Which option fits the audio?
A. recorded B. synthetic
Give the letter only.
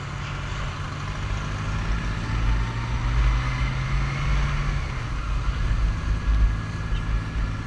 A